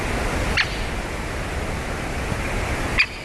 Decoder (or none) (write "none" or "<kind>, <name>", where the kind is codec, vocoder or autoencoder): none